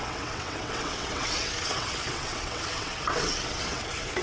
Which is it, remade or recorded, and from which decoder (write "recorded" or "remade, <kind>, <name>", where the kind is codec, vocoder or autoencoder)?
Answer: remade, vocoder, WaveNeXt